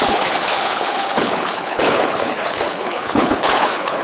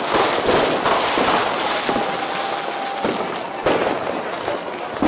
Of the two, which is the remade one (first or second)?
first